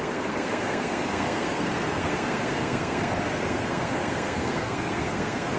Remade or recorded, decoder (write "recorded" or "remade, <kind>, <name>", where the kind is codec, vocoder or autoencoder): remade, codec, SNAC